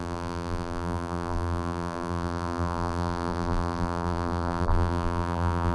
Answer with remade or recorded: remade